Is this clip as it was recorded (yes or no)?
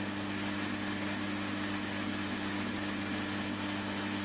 yes